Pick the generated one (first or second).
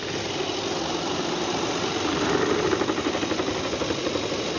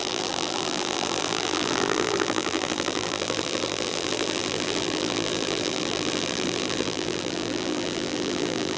second